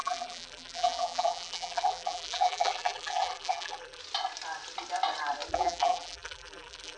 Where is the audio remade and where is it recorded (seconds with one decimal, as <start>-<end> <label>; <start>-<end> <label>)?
0.0-4.0 remade; 4.0-5.5 recorded; 5.5-7.0 remade